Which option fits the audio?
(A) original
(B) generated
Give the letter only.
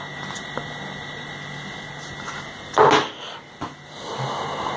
A